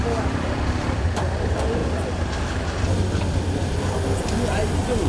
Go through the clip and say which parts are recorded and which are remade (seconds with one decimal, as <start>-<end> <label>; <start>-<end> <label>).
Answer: 0.0-5.1 recorded